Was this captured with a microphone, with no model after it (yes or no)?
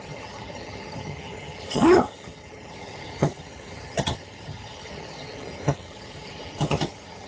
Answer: no